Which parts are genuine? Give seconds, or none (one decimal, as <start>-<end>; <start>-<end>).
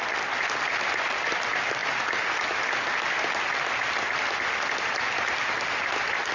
0.0-6.3